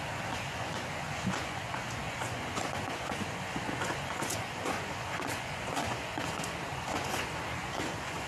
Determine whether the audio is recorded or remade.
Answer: remade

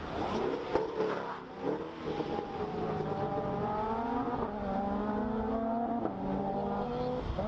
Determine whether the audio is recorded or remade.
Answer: recorded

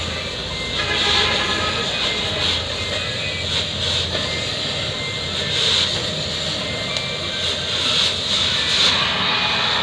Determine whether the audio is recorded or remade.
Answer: recorded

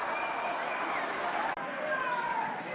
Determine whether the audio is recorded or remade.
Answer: recorded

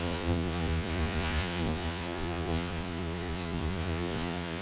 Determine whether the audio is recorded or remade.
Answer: remade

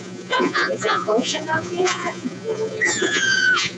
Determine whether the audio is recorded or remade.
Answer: remade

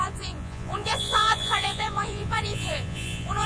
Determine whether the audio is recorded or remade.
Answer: remade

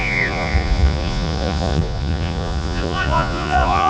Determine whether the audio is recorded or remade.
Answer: remade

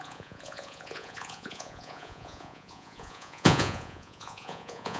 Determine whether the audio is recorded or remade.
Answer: remade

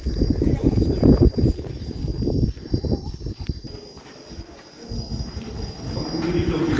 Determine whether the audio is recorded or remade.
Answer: recorded